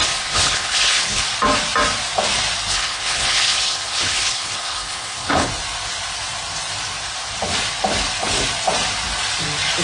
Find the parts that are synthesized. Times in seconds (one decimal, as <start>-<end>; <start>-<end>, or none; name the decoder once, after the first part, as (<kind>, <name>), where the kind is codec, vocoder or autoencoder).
0.0-1.2 (codec, HILCodec); 2.7-5.5